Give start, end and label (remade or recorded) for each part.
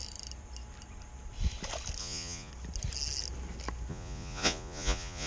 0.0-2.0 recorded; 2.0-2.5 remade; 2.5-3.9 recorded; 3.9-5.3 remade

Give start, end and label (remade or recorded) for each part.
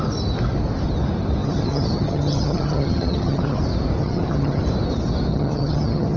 0.0-1.4 recorded; 1.4-3.6 remade; 3.6-4.0 recorded; 4.0-4.6 remade; 4.6-5.3 recorded; 5.3-6.2 remade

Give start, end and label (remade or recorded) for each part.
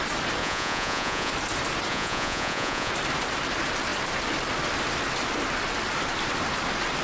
0.0-0.4 recorded; 0.4-1.3 remade; 1.3-1.9 recorded; 1.9-2.9 remade; 2.9-7.0 recorded